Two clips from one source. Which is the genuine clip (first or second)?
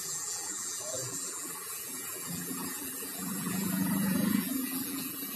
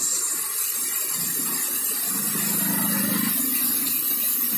second